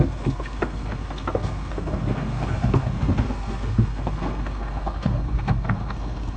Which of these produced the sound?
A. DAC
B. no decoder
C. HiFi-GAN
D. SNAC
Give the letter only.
D